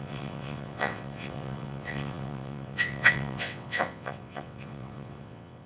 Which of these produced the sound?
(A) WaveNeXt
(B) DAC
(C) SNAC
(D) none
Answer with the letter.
A